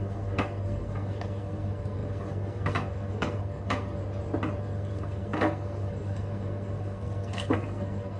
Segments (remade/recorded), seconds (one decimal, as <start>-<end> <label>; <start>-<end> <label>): 0.0-4.0 remade; 4.0-4.6 recorded; 4.6-8.2 remade